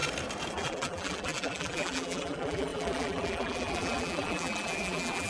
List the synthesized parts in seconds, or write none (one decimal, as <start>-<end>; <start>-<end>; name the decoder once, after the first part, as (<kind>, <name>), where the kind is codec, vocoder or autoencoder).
0.5-5.3 (vocoder, BigVGAN v2)